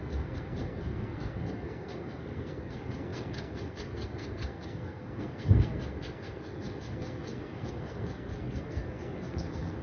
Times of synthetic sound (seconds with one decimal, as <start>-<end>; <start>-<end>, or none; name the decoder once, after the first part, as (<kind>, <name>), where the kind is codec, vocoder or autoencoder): 0.0-9.8 (codec, SNAC)